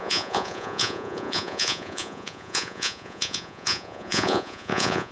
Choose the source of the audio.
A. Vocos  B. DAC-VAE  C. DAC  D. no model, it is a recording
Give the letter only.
A